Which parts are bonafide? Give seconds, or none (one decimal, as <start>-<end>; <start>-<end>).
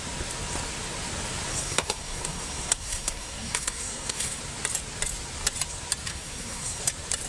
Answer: 0.0-1.5; 4.4-6.1; 6.8-7.3